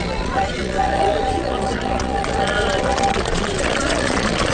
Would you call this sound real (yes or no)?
no